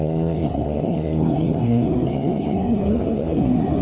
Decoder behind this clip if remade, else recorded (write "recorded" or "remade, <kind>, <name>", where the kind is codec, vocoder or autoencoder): remade, codec, SNAC